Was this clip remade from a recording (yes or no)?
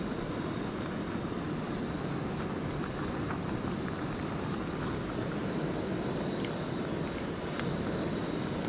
no